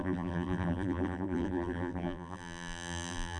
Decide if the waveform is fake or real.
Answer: fake